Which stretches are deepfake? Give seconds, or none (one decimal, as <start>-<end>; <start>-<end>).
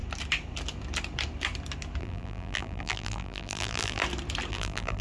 2.0-4.0; 4.5-5.0